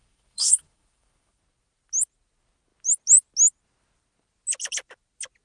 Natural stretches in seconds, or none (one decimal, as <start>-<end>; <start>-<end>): 1.4-5.4